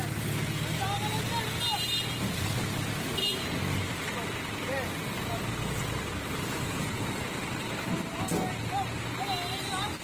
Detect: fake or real real